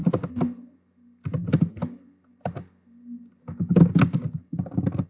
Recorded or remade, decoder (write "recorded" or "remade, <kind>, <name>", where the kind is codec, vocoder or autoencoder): recorded